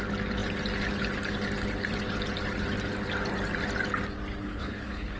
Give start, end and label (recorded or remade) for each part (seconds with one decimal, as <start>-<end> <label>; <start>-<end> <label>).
0.0-4.4 recorded; 4.4-5.2 remade